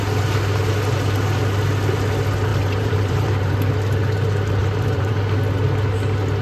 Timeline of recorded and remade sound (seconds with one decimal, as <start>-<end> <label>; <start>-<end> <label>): 0.0-2.5 recorded; 2.5-3.5 remade; 3.5-4.6 recorded; 4.6-5.1 remade; 5.1-6.4 recorded